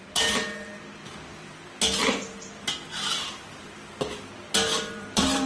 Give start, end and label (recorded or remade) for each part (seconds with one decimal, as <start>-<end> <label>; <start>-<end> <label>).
0.0-4.7 recorded; 4.7-5.5 remade